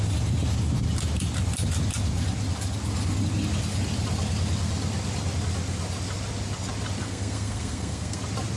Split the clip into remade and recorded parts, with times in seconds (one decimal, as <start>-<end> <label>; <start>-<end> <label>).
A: 0.0-7.0 recorded; 7.0-8.2 remade; 8.2-8.6 recorded